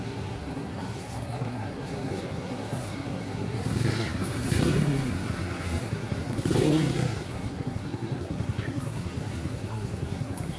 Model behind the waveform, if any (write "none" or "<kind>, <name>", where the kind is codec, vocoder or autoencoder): codec, SNAC